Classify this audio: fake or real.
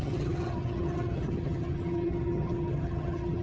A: fake